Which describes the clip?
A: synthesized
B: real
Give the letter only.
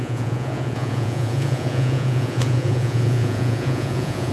A